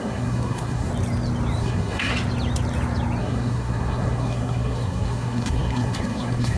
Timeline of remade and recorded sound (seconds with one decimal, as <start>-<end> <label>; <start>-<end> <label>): 0.0-0.9 remade; 0.9-1.6 recorded; 1.6-2.1 remade; 2.1-3.2 recorded; 3.2-6.6 remade